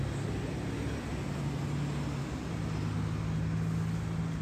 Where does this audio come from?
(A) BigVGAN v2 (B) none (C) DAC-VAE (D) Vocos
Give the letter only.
B